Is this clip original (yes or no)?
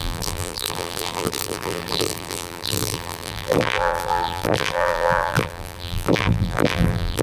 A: no